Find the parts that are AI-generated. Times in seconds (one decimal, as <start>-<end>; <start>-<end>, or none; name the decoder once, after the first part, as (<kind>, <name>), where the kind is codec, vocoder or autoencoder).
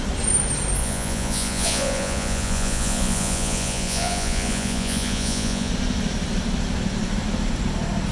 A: 0.8-5.7 (vocoder, Vocos)